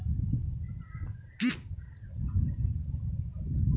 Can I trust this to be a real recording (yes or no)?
yes